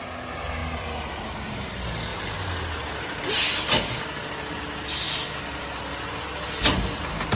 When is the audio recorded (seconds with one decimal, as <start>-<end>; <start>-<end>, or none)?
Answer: 0.0-7.4